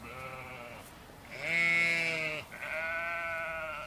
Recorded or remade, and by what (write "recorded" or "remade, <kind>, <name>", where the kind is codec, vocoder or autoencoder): recorded